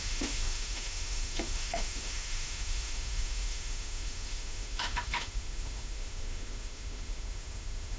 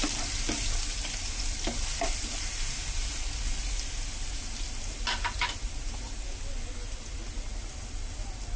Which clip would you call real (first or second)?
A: second